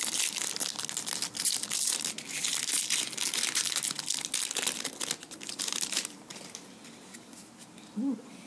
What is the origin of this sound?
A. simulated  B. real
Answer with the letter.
B